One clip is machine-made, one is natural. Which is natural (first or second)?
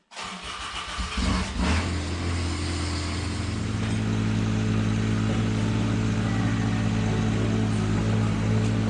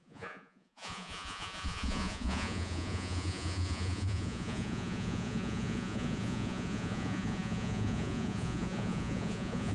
first